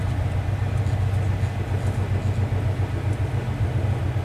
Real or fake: real